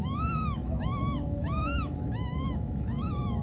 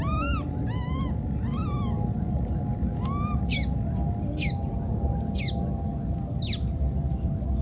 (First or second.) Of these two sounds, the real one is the second